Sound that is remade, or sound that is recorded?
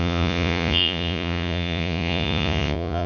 remade